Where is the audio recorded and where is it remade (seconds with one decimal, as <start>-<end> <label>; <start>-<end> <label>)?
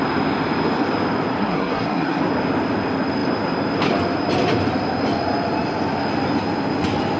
0.0-1.4 recorded; 1.4-2.2 remade; 2.2-7.2 recorded